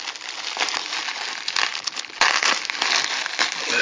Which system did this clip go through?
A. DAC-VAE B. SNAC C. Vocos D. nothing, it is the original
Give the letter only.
D